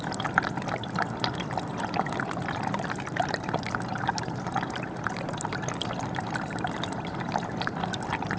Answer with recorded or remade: recorded